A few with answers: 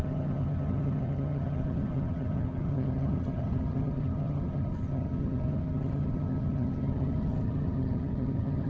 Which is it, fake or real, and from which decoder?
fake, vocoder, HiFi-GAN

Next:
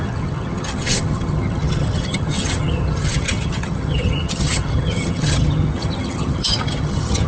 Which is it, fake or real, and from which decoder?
fake, vocoder, HiFi-GAN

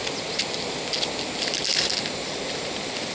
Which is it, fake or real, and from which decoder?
real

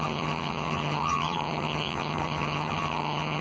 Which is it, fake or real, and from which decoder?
fake, vocoder, HiFi-GAN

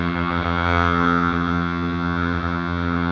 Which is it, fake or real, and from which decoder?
fake, vocoder, HiFi-GAN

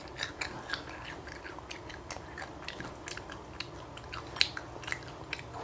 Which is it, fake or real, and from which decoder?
real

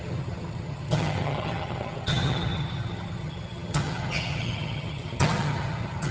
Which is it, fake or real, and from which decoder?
fake, vocoder, HiFi-GAN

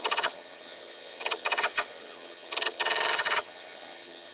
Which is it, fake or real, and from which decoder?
fake, vocoder, HiFi-GAN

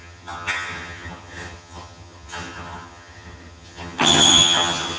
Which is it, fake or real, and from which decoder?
fake, vocoder, HiFi-GAN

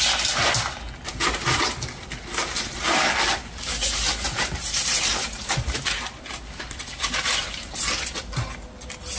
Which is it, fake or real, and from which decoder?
real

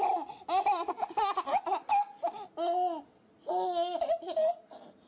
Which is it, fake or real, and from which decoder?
real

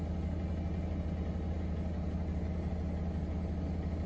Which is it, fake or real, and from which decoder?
real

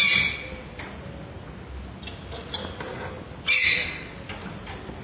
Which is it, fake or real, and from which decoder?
real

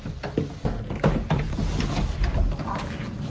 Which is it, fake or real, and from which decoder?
real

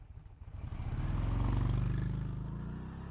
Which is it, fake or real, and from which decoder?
real